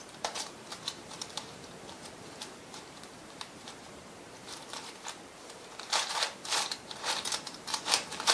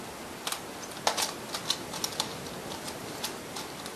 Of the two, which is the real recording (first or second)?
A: second